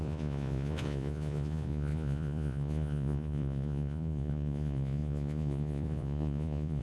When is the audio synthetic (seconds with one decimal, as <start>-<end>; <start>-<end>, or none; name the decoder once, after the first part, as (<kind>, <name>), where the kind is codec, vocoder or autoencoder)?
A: 0.0-6.8 (vocoder, Vocos)